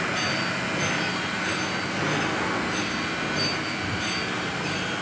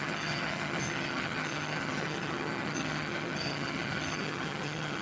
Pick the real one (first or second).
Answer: first